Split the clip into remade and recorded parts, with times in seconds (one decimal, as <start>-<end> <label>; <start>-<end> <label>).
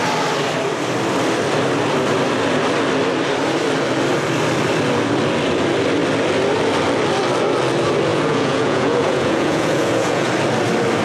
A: 0.0-8.1 recorded; 8.1-10.3 remade; 10.3-11.0 recorded